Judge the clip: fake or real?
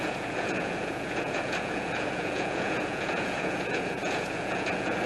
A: fake